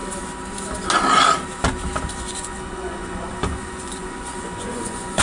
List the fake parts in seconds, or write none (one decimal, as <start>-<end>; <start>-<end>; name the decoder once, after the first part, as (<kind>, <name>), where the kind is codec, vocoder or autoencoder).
2.2-5.2 (vocoder, Vocos)